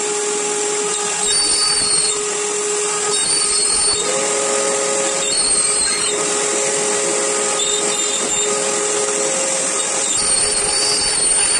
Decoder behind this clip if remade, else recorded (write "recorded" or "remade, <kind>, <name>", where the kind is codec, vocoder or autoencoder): recorded